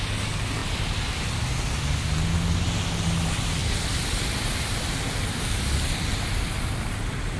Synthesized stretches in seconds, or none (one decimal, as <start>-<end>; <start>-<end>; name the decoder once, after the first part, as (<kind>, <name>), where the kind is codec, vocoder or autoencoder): none